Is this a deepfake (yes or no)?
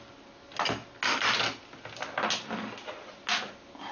no